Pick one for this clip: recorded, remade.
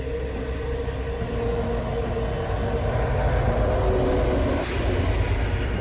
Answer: recorded